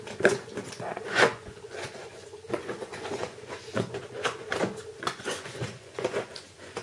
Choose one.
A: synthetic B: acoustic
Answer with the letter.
A